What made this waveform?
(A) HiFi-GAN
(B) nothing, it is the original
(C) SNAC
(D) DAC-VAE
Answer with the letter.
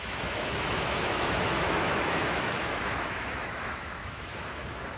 D